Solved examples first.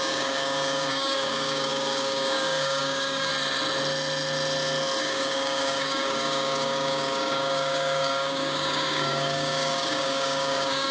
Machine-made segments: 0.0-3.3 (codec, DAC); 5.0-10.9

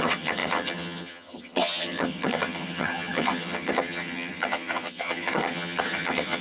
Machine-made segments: 0.0-6.4 (vocoder, HiFi-GAN)

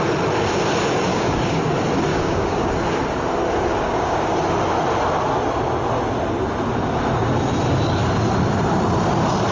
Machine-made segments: 1.1-1.6 (codec, DAC); 2.1-2.7; 3.7-4.3

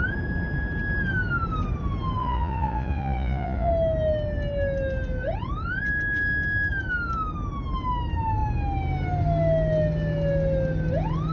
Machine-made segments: 2.2-3.7 (vocoder, Vocos)

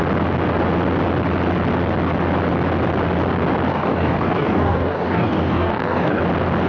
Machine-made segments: 3.7-6.2 (codec, DAC)